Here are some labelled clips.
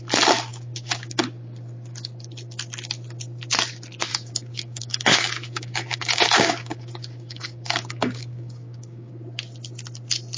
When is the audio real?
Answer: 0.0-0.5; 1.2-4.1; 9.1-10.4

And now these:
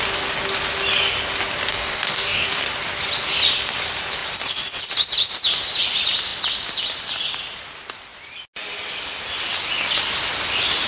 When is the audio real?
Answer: 0.0-1.7; 2.6-10.9

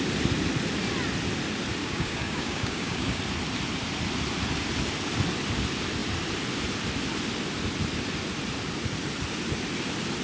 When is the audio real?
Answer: 0.0-1.8; 3.2-10.2

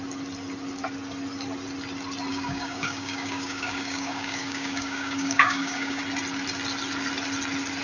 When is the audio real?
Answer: 0.0-2.3; 6.0-7.8

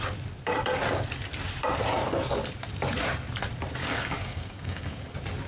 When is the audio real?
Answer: 0.0-3.8; 5.1-5.5

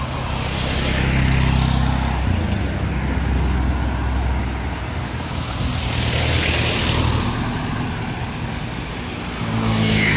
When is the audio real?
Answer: 0.0-8.2; 8.9-10.2

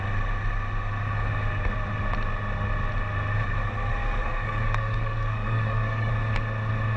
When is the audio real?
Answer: 0.0-4.0; 6.1-7.0